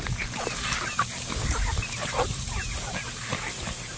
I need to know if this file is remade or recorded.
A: recorded